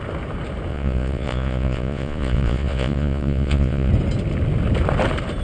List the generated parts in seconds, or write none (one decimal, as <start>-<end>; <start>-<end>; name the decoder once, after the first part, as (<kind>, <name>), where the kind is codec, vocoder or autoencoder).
0.7-3.9 (vocoder, Vocos)